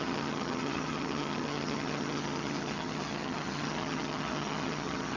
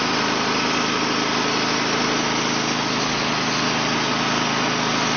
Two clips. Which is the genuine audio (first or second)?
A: second